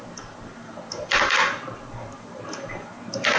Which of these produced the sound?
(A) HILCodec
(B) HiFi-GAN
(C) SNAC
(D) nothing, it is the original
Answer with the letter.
D